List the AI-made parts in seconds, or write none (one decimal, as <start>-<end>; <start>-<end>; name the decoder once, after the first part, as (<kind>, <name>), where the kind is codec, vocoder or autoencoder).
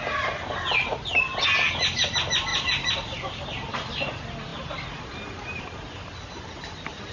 2.5-3.4 (vocoder, BigVGAN v2)